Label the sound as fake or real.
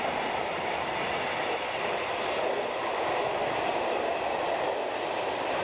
real